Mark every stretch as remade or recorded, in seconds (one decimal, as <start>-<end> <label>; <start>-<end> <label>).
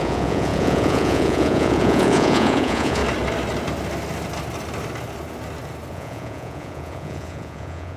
0.0-3.0 remade; 3.0-5.9 recorded; 5.9-8.0 remade